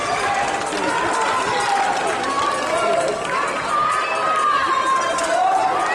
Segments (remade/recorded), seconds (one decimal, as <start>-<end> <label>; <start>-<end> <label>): 0.0-4.6 recorded; 4.6-5.5 remade; 5.5-5.9 recorded